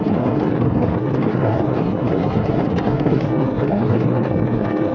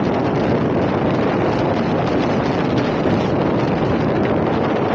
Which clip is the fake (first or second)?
first